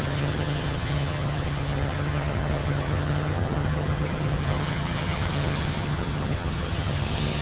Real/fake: fake